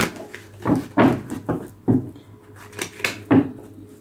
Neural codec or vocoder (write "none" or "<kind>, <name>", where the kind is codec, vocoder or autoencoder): none